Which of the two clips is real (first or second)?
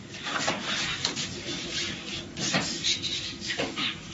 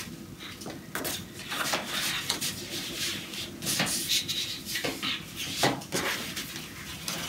second